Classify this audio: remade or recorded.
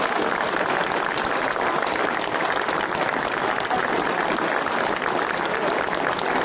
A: recorded